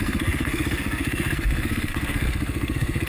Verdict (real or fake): fake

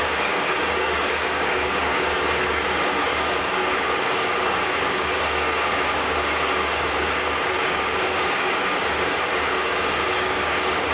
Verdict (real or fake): fake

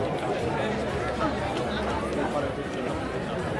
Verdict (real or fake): real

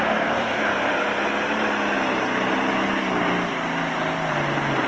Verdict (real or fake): real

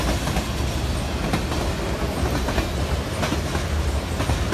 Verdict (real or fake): real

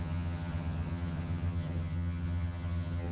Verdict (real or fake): fake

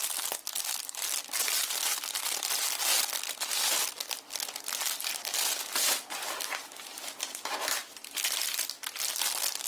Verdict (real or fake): real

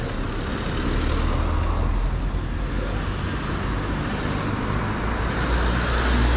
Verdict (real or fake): real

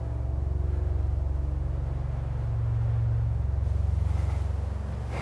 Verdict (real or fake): real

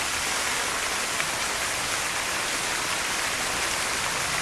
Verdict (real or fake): real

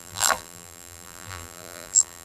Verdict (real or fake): fake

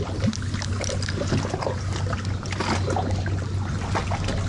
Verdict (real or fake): real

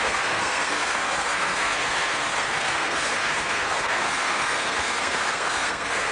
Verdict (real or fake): fake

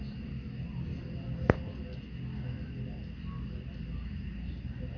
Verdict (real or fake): real